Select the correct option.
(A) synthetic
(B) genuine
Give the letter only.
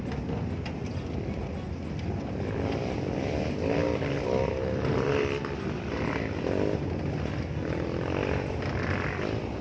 B